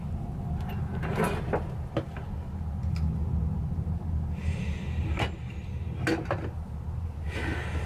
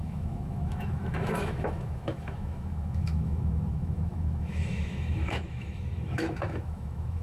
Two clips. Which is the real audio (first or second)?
first